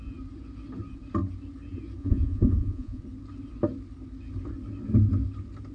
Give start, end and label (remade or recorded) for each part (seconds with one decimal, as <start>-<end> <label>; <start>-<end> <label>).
0.0-2.0 recorded; 2.0-3.0 remade; 3.0-5.7 recorded